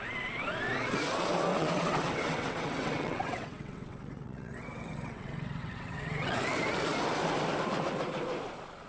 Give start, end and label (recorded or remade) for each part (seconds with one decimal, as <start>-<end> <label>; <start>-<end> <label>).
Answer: 0.0-1.5 recorded; 1.5-6.4 remade; 6.4-8.9 recorded